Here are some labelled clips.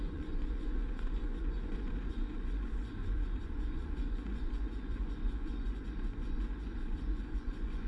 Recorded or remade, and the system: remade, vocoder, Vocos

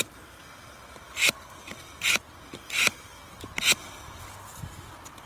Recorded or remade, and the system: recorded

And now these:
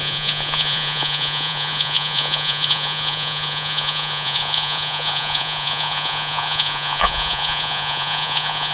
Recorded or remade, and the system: remade, vocoder, Vocos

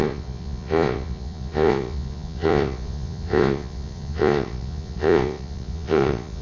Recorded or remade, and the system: remade, vocoder, Vocos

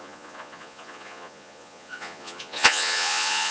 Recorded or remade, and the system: remade, vocoder, Vocos